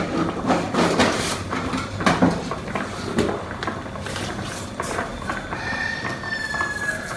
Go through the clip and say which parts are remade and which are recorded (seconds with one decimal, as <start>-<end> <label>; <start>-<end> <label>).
0.0-7.2 recorded